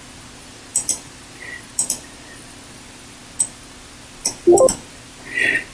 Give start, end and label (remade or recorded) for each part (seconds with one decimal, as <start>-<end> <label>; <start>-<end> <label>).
0.0-5.7 recorded